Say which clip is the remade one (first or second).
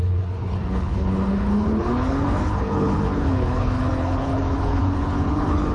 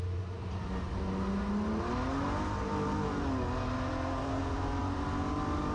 first